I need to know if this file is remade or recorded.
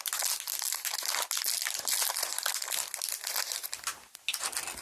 recorded